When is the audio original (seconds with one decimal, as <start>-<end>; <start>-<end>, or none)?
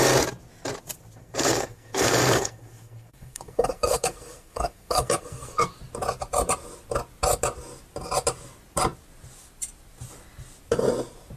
0.0-1.2; 5.7-11.4